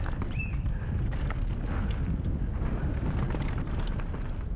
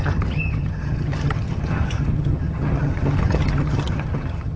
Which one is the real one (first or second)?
first